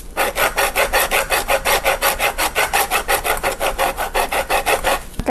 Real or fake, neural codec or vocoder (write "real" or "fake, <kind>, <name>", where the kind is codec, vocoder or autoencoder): real